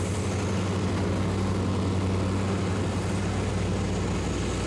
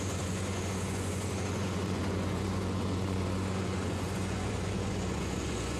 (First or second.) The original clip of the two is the first